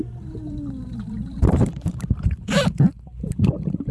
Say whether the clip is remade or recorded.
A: remade